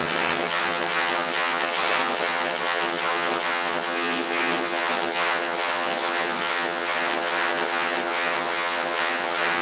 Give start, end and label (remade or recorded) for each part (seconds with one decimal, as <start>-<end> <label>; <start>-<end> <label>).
0.0-9.6 remade